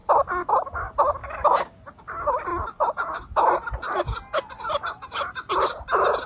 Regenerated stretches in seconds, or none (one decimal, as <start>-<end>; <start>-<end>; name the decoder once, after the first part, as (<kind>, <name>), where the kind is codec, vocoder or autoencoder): 1.2-1.8 (codec, DAC)